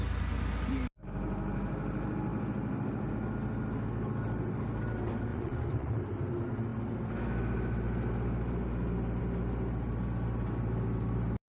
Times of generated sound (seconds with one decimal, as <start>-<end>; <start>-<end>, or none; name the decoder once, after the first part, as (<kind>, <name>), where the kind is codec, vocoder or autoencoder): 5.3-6.0 (vocoder, Vocos)

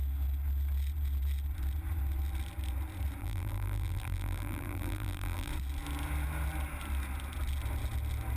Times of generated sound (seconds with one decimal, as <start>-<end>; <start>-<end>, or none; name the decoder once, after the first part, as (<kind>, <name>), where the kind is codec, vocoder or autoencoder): 3.2-5.5 (vocoder, BigVGAN v2)

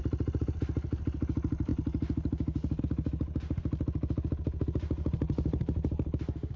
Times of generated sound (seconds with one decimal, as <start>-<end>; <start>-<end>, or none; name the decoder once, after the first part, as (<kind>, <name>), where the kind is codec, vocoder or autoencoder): none

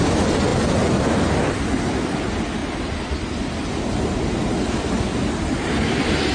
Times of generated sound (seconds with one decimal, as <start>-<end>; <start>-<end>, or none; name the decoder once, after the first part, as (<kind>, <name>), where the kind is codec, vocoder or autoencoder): none

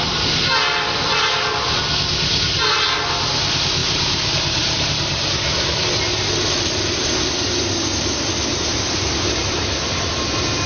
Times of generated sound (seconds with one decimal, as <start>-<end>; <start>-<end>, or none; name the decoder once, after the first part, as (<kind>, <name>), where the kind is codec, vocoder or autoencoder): 3.8-6.3 (vocoder, BigVGAN v2); 8.5-9.4

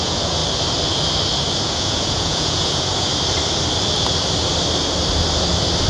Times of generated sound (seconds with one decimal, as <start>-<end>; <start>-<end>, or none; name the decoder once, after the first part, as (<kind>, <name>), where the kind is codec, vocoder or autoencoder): 0.0-0.4 (vocoder, Vocos); 1.6-3.1